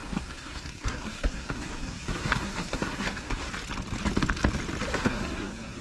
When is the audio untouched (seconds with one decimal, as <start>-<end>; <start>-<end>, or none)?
3.5-4.9